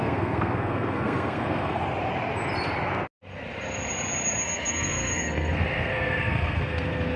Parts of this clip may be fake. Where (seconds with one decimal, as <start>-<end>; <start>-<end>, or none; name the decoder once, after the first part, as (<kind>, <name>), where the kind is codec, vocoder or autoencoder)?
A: 0.0-1.8 (codec, SNAC); 4.4-7.2